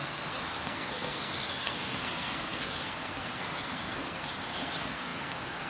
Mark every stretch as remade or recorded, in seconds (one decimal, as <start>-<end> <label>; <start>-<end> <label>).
0.0-5.7 remade

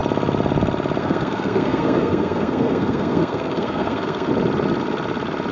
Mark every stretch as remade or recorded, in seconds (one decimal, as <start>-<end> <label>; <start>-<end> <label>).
0.0-1.0 recorded; 1.0-4.3 remade; 4.3-5.5 recorded

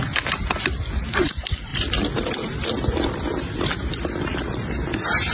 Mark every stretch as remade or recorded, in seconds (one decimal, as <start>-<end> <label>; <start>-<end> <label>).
0.0-5.3 recorded

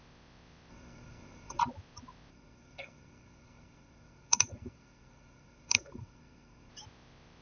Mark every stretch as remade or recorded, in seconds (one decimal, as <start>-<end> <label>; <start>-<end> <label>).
0.0-0.7 recorded; 0.7-1.6 remade; 1.6-2.3 recorded; 2.3-6.7 remade; 6.7-7.4 recorded

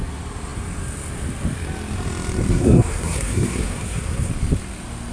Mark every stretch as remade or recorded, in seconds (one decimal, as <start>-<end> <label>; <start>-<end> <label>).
0.0-2.5 recorded; 2.5-4.3 remade; 4.3-5.1 recorded

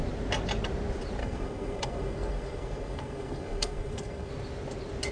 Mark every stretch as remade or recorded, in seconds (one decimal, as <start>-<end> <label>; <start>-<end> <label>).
0.0-1.2 recorded; 1.2-4.3 remade; 4.3-5.1 recorded

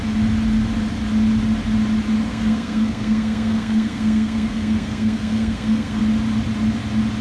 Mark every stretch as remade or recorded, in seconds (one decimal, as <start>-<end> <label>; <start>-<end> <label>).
0.0-2.3 recorded; 2.3-6.0 remade; 6.0-7.2 recorded